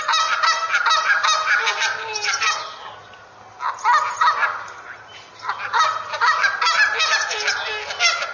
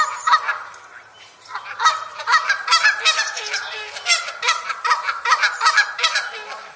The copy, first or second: second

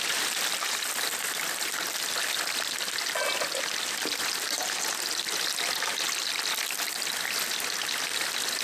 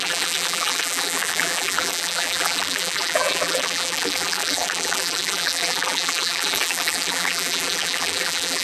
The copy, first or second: second